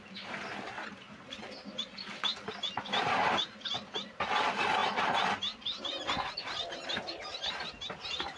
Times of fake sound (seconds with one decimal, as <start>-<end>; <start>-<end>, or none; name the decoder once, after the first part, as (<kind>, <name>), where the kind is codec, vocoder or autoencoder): none